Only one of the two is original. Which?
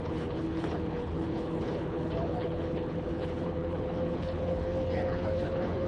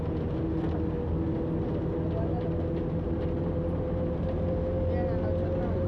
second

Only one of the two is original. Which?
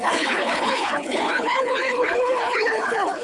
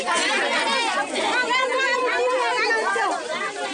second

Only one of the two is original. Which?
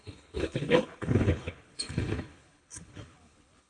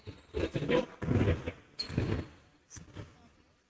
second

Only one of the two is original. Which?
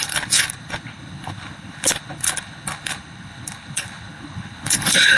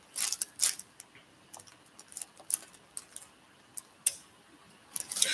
second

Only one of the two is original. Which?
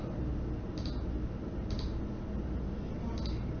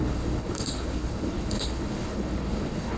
first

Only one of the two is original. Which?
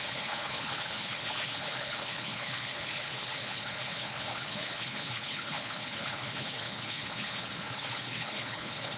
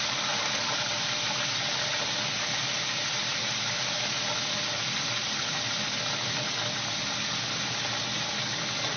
second